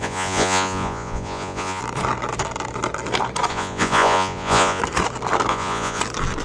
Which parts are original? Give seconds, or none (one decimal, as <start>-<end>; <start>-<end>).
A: 1.8-3.5; 4.8-5.5; 6.0-6.4